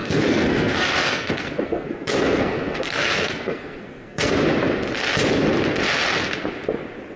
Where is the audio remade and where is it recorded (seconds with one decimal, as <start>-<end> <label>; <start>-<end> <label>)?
0.0-4.3 remade; 4.3-7.2 recorded